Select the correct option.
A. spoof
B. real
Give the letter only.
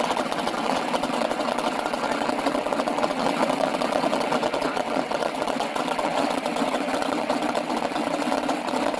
A